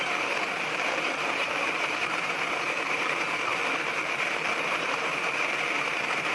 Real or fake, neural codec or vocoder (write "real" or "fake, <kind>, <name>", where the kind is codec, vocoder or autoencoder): fake, vocoder, BigVGAN v2